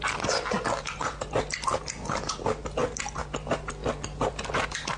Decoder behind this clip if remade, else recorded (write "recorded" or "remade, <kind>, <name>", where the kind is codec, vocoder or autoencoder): recorded